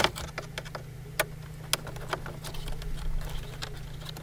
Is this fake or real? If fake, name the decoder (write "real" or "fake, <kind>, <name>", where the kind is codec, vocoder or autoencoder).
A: real